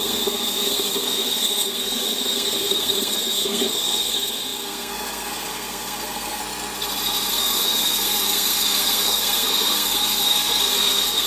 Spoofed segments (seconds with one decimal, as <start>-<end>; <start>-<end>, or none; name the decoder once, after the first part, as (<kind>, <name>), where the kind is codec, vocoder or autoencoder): 0.0-6.4 (codec, SNAC); 7.3-11.3